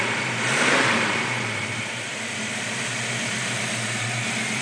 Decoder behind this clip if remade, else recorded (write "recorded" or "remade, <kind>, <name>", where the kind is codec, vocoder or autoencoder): remade, vocoder, BigVGAN v2